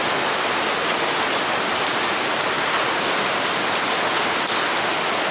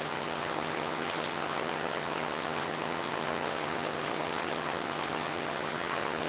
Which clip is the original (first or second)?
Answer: first